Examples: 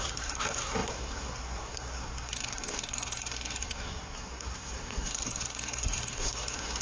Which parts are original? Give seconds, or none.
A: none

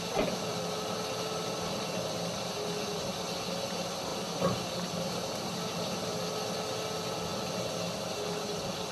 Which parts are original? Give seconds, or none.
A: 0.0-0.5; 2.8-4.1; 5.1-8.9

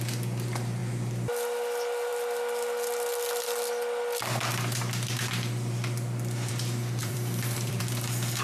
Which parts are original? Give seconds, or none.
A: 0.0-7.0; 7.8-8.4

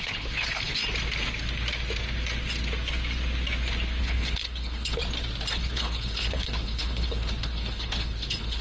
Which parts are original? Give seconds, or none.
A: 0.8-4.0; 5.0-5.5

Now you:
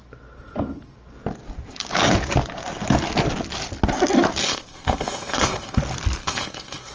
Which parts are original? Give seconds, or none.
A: 0.0-4.4; 5.8-6.2